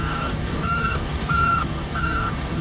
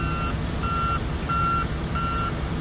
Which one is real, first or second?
second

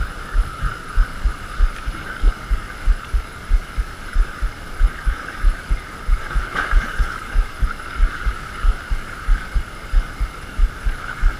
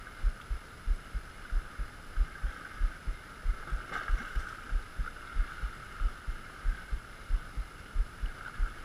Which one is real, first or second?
second